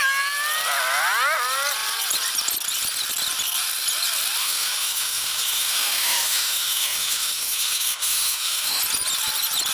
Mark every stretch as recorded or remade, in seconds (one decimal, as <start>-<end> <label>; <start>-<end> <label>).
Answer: 0.0-4.4 recorded; 4.4-8.8 remade; 8.8-9.7 recorded